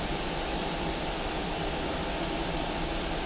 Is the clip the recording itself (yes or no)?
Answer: yes